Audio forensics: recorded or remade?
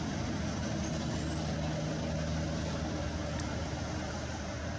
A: recorded